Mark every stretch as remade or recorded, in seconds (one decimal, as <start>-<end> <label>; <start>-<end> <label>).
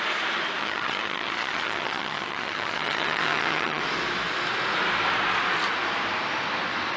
0.0-0.6 recorded; 0.6-3.8 remade; 3.8-7.0 recorded